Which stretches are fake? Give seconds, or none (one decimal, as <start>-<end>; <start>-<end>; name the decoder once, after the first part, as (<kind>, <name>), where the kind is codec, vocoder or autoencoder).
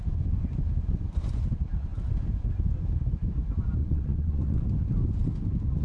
3.8-4.6 (vocoder, WaveNeXt)